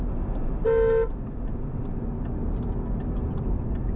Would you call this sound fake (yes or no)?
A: no